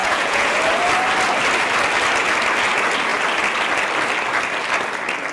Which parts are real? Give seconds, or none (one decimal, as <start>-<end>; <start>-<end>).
0.6-5.3